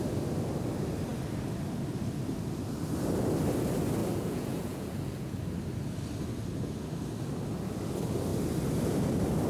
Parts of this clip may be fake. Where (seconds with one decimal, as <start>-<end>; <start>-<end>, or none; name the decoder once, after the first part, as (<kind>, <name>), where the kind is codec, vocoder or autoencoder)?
4.0-5.4 (vocoder, Vocos)